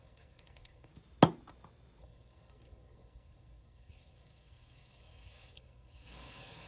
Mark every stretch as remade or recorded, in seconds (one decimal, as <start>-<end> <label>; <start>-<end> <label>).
0.0-0.9 remade; 0.9-2.0 recorded; 2.0-6.7 remade